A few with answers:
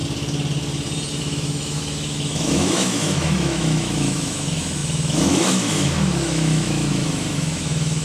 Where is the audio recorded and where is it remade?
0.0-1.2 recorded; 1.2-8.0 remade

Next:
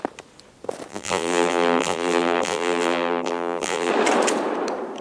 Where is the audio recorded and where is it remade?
0.0-0.9 recorded; 0.9-3.9 remade; 3.9-5.0 recorded

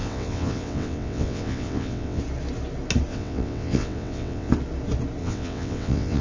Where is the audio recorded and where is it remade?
0.0-2.2 remade; 2.2-3.1 recorded; 3.1-4.5 remade; 4.5-5.2 recorded; 5.2-6.2 remade

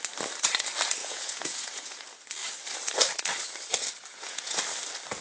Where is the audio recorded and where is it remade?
0.0-1.0 recorded; 1.0-2.1 remade; 2.1-4.1 recorded; 4.1-4.6 remade; 4.6-5.2 recorded

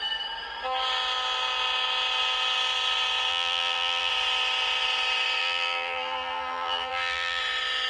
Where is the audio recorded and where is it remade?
0.0-3.3 recorded; 3.3-4.1 remade; 4.1-5.4 recorded; 5.4-7.4 remade; 7.4-7.9 recorded

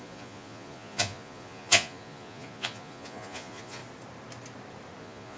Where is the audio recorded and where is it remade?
0.0-3.8 remade; 3.8-5.0 recorded; 5.0-5.4 remade

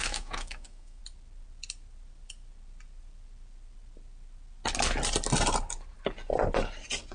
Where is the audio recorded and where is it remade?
0.0-1.0 remade; 1.0-7.1 recorded

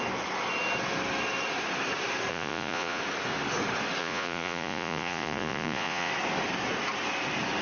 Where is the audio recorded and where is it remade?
0.0-2.3 recorded; 2.3-3.0 remade; 3.0-4.0 recorded; 4.0-6.1 remade; 6.1-7.6 recorded